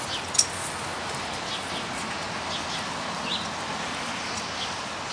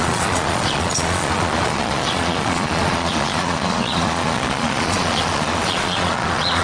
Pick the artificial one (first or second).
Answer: second